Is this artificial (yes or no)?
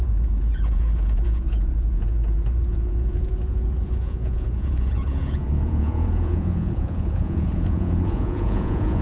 yes